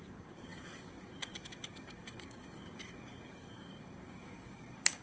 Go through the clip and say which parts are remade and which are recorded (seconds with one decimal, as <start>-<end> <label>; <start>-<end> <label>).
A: 0.0-5.0 remade